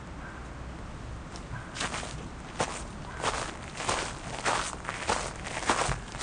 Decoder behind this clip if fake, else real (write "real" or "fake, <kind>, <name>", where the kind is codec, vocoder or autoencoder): real